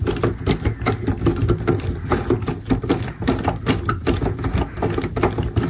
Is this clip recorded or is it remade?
recorded